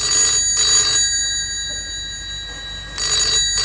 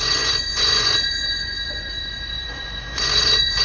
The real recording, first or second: first